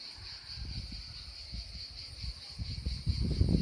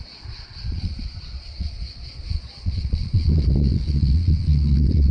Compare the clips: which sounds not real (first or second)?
second